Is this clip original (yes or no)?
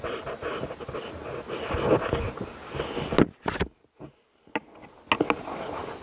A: yes